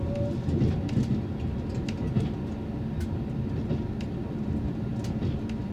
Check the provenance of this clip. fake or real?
real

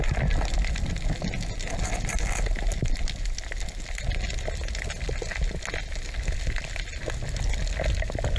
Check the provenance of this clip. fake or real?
real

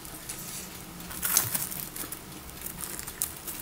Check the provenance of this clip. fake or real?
real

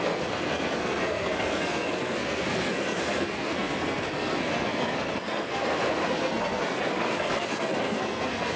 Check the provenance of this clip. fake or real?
fake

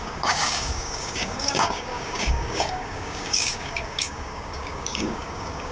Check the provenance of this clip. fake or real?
fake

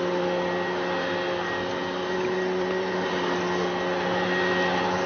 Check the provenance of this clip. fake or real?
real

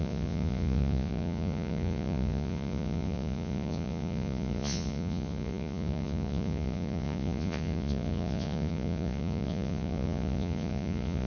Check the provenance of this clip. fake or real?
fake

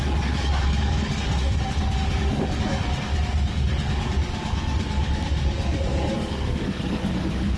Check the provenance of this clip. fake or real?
fake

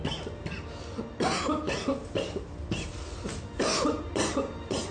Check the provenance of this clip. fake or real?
real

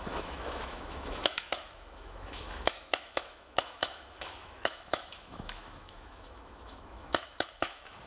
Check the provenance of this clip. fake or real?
fake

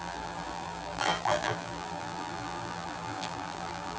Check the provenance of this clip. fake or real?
fake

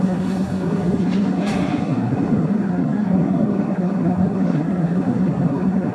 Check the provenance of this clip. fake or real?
fake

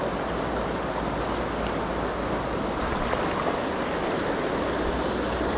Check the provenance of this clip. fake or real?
real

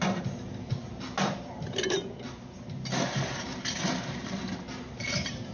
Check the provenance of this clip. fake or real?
real